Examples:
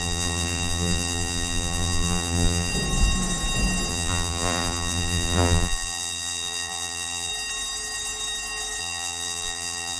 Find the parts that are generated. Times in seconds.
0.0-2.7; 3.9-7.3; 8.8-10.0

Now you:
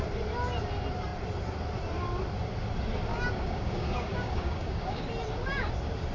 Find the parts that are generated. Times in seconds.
3.1-5.0